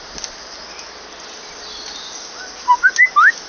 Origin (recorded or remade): recorded